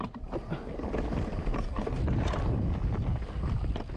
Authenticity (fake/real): real